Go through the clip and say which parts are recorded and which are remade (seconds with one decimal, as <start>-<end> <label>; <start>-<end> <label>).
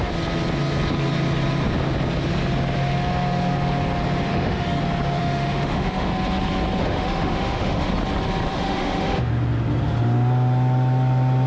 0.0-4.3 recorded; 4.3-4.8 remade; 4.8-5.2 recorded; 5.2-6.1 remade; 6.1-6.8 recorded; 6.8-7.9 remade; 7.9-8.5 recorded; 8.5-9.3 remade; 9.3-11.5 recorded